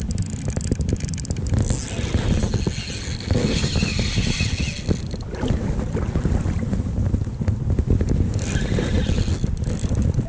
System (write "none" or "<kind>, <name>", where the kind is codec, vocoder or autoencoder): none